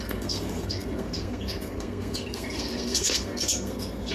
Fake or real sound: fake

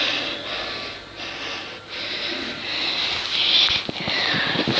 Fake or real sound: real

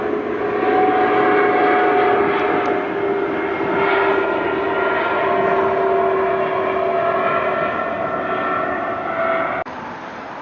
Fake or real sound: real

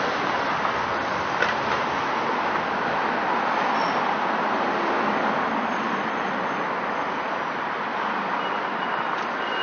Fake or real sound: real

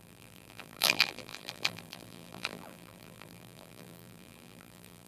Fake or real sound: fake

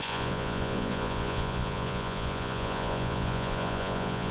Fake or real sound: fake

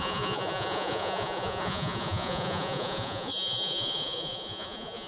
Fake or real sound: fake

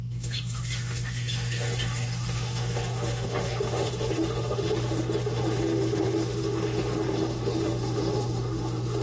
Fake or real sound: fake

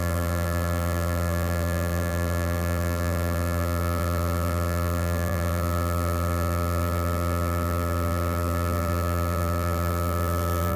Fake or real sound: fake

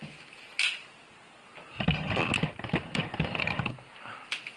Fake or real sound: real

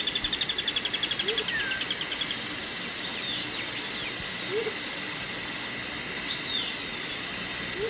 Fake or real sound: real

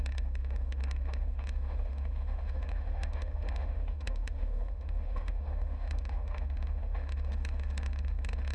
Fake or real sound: fake